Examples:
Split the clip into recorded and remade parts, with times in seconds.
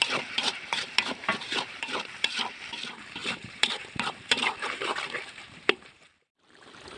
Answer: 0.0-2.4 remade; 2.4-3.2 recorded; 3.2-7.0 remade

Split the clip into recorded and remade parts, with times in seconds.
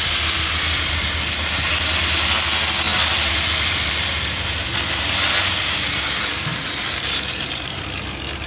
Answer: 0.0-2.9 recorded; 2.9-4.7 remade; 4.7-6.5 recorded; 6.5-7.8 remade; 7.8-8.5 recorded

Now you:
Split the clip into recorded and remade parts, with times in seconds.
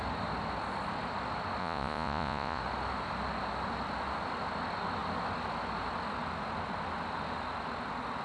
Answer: 0.0-1.6 recorded; 1.6-2.6 remade; 2.6-8.2 recorded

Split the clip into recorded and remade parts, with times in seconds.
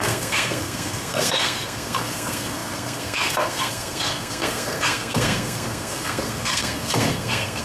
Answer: 0.0-7.6 remade